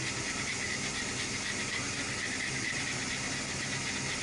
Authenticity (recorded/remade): recorded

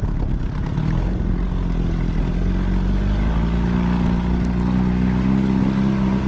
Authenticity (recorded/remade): recorded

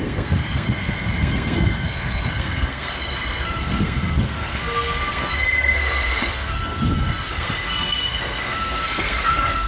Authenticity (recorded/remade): remade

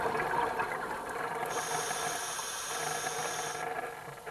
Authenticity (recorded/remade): recorded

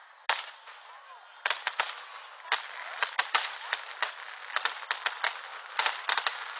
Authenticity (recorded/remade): recorded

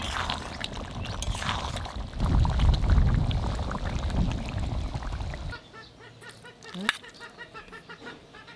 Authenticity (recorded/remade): recorded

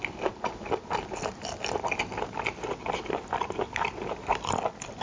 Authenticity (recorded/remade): recorded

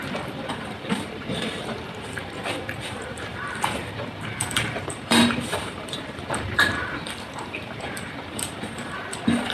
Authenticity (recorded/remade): remade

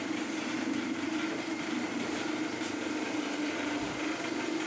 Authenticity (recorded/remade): remade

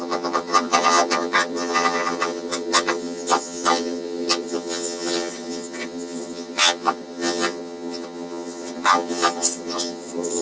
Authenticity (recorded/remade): remade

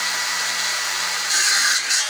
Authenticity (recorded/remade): remade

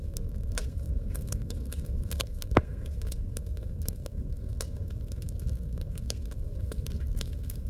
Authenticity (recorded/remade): remade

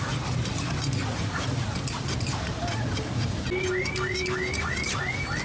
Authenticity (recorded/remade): recorded